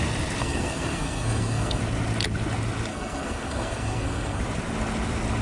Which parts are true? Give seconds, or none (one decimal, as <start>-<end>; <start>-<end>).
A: 0.0-0.4; 1.8-2.9; 4.4-5.4